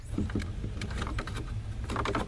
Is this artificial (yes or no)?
no